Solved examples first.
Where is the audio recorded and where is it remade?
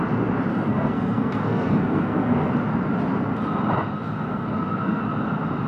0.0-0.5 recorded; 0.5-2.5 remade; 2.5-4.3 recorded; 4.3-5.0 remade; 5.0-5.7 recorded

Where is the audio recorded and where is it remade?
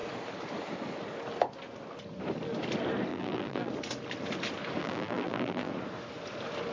0.0-3.1 recorded; 3.1-3.7 remade; 3.7-4.8 recorded; 4.8-5.7 remade; 5.7-6.7 recorded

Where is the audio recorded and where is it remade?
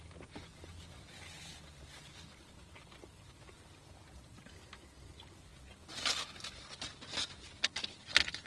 0.0-8.5 recorded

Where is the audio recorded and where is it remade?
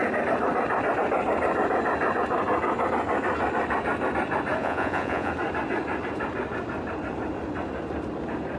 0.0-4.6 recorded; 4.6-5.3 remade; 5.3-8.6 recorded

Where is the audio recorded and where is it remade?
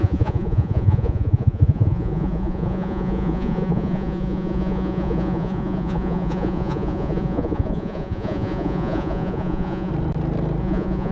0.0-9.9 remade; 9.9-10.6 recorded; 10.6-11.1 remade